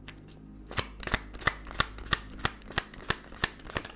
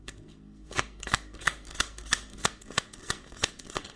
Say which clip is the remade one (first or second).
second